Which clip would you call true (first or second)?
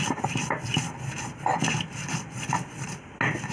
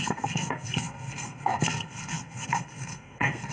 first